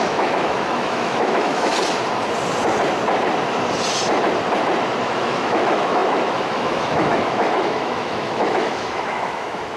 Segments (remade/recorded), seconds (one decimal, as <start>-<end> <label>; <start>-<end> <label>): 0.0-1.7 remade; 1.7-5.0 recorded; 5.0-9.8 remade